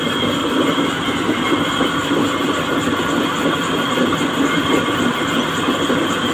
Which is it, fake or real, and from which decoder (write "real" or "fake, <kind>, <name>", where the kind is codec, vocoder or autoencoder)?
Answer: fake, vocoder, BigVGAN v2